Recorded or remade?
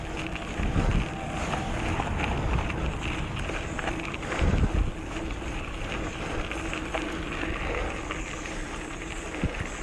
recorded